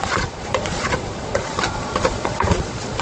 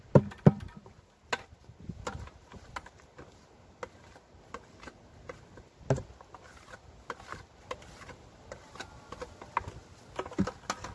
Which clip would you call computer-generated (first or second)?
first